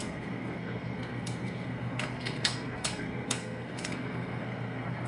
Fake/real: fake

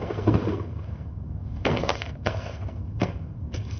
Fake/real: fake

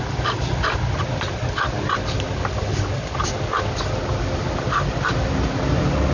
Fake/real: real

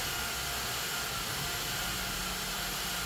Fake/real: real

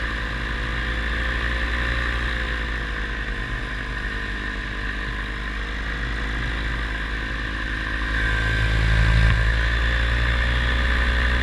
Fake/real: real